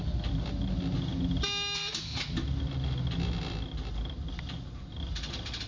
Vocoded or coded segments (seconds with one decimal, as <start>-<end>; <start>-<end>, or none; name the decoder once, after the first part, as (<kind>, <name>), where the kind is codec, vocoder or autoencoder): none